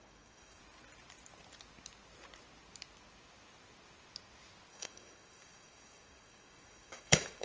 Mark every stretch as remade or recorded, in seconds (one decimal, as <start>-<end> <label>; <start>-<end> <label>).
0.0-0.6 remade; 0.6-4.7 recorded; 4.7-7.4 remade

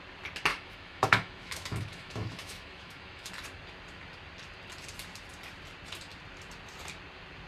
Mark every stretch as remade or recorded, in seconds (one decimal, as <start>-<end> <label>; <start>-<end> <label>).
0.0-0.5 recorded; 0.5-3.3 remade; 3.3-7.5 recorded

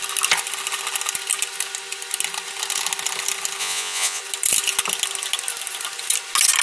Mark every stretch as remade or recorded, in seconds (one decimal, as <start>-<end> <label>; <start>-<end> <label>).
0.0-3.6 recorded; 3.6-4.2 remade; 4.2-6.6 recorded

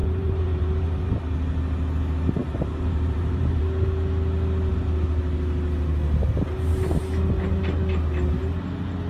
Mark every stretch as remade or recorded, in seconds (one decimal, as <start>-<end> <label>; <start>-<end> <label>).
0.0-1.1 remade; 1.1-2.4 recorded; 2.4-3.6 remade; 3.6-9.1 recorded